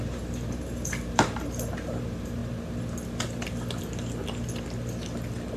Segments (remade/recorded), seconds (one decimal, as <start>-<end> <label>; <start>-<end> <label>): 0.0-2.4 remade; 2.4-5.6 recorded